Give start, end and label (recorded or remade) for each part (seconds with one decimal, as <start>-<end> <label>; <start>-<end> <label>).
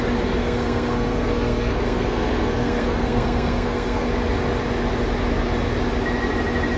0.0-0.4 recorded; 0.4-4.1 remade; 4.1-6.8 recorded